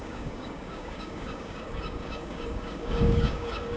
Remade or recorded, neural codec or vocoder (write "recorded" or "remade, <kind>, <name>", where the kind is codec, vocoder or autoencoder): remade, codec, DAC